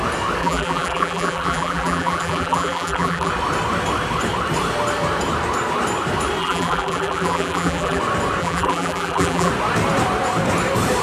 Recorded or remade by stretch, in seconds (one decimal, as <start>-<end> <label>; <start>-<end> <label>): 0.0-0.4 recorded; 0.4-3.3 remade; 3.3-6.4 recorded; 6.4-8.0 remade; 8.0-8.4 recorded; 8.4-9.5 remade; 9.5-11.0 recorded

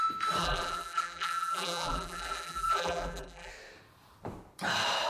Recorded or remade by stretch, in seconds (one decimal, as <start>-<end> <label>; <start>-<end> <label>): 0.0-0.4 recorded; 0.4-3.5 remade; 3.5-5.1 recorded

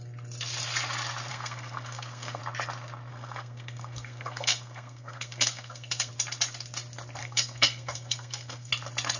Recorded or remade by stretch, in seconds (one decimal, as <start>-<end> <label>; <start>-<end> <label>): 0.0-1.3 recorded; 1.3-2.4 remade; 2.4-3.1 recorded; 3.1-6.1 remade; 6.1-7.2 recorded; 7.2-8.7 remade; 8.7-9.2 recorded

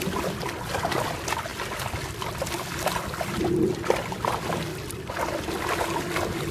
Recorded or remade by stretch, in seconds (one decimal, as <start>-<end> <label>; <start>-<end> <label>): 0.0-6.5 recorded